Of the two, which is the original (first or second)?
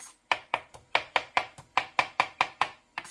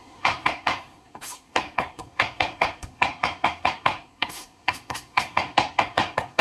first